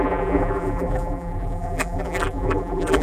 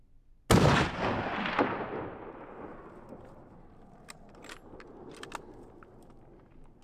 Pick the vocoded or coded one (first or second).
first